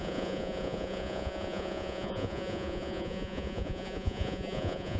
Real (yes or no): no